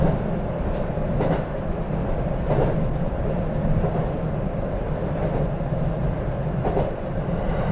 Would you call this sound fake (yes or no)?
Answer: no